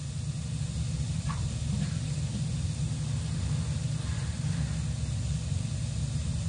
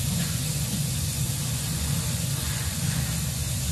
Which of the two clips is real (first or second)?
first